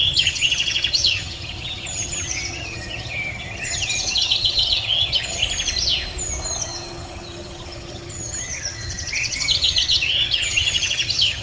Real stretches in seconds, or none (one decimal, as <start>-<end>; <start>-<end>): 5.4-6.6